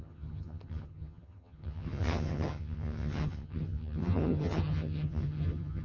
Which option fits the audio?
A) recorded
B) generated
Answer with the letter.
B